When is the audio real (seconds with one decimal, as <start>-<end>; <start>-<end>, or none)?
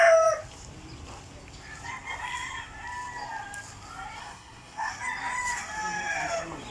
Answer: 0.0-4.2; 4.9-6.7